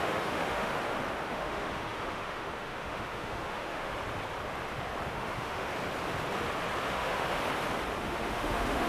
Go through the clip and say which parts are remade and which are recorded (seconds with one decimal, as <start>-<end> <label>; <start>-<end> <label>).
0.0-0.7 remade; 0.7-1.3 recorded; 1.3-3.9 remade; 3.9-5.1 recorded; 5.1-5.7 remade; 5.7-6.9 recorded; 6.9-7.4 remade; 7.4-8.0 recorded; 8.0-8.9 remade